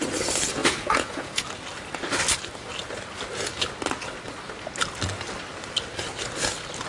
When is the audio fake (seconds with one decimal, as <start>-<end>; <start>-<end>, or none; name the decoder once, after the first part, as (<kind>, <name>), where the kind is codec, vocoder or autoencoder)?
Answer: 0.6-1.4 (vocoder, Vocos)